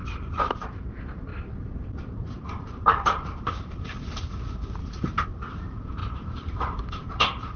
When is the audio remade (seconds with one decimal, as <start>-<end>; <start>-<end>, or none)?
0.0-1.3; 1.9-4.8; 5.3-7.6